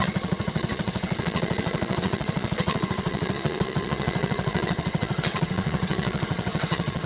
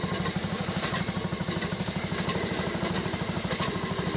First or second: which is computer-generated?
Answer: first